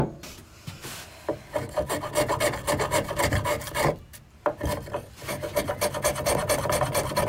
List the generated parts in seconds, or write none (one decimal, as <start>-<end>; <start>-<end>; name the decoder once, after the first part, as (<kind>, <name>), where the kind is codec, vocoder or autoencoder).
none